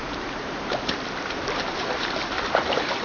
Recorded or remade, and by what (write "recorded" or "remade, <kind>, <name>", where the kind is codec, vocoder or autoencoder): recorded